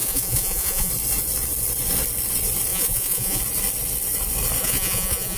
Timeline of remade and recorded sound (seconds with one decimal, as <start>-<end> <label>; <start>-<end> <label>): 0.0-0.9 remade; 0.9-2.7 recorded; 2.7-3.4 remade; 3.4-4.6 recorded; 4.6-5.4 remade